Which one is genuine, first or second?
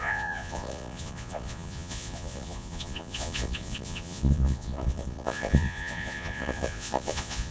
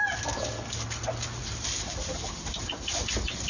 second